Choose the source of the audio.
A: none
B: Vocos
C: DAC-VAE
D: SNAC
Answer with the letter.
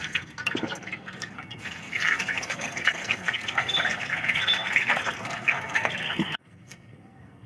D